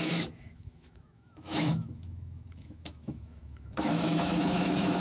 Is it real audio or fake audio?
fake